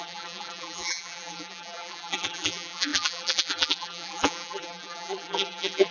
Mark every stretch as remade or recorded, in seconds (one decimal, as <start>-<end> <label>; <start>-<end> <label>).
0.0-5.9 remade

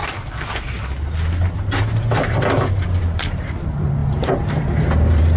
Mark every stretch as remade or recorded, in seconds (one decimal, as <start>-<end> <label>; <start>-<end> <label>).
0.0-3.0 recorded; 3.0-5.4 remade

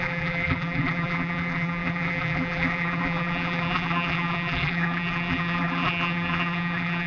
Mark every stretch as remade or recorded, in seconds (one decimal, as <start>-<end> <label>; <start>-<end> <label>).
0.0-7.1 remade

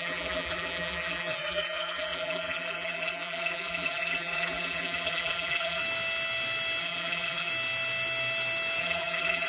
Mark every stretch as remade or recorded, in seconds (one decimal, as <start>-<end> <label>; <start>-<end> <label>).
0.0-5.8 remade; 5.8-6.8 recorded; 6.8-7.5 remade; 7.5-8.8 recorded; 8.8-9.5 remade